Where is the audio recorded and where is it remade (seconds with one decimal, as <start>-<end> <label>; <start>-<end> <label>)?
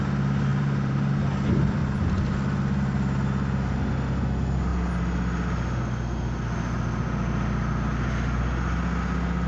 0.0-0.5 recorded; 0.5-1.1 remade; 1.1-1.8 recorded; 1.8-3.8 remade; 3.8-9.5 recorded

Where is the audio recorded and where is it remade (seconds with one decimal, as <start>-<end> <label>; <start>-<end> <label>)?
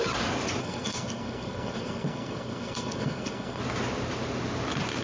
0.0-0.6 recorded; 0.6-3.6 remade; 3.6-5.0 recorded